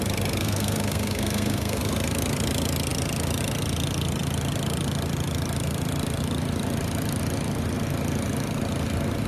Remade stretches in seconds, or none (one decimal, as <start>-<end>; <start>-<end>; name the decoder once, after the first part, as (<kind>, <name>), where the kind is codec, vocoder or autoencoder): 0.4-1.8 (codec, SNAC)

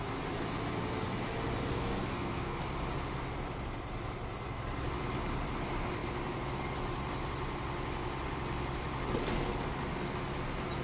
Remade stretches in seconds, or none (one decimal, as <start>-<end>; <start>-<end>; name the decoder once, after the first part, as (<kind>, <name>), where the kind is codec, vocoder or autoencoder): 1.7-2.6 (codec, SNAC)

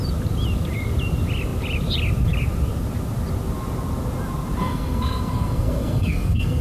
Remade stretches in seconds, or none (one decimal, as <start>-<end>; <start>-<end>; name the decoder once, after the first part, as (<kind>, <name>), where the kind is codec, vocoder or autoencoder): 4.6-6.6 (codec, SNAC)

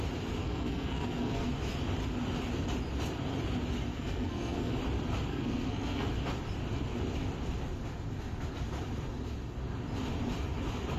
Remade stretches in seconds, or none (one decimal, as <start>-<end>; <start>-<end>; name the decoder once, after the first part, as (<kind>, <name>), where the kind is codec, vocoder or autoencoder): 0.4-1.5 (codec, SNAC); 3.9-4.8; 5.3-6.1

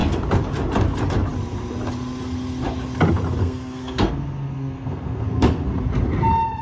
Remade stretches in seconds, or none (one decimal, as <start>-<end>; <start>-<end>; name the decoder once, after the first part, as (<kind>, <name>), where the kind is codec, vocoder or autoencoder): 3.4-5.7 (codec, SNAC)